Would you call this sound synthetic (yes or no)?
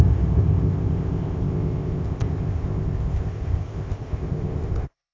yes